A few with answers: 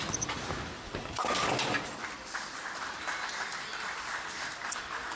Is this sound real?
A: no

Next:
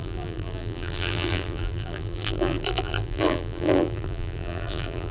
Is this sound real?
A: no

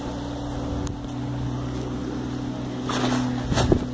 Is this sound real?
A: yes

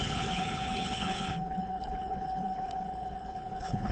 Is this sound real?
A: no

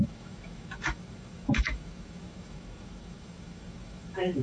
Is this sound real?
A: no